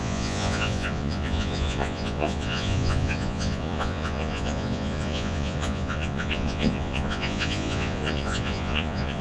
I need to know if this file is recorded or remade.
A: remade